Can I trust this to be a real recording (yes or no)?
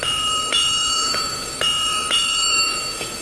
no